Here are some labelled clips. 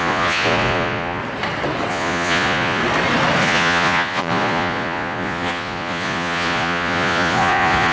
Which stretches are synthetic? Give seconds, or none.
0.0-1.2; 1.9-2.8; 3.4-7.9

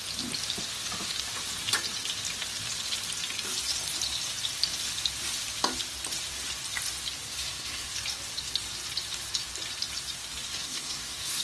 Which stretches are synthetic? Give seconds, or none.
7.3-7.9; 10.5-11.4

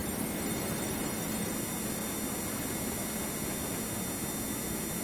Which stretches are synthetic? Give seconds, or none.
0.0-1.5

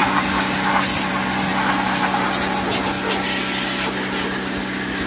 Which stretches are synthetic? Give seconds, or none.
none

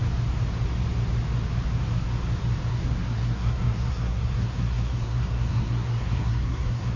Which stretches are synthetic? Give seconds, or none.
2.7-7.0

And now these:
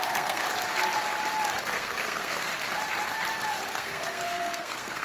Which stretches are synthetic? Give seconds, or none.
0.0-0.4; 1.6-2.5; 3.7-5.0

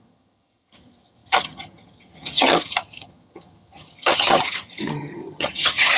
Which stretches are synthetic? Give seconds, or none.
0.0-6.0

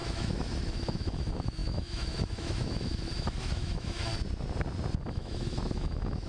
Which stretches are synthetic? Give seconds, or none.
0.0-4.1; 5.1-6.3